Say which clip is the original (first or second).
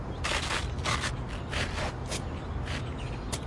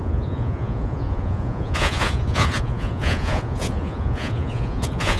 first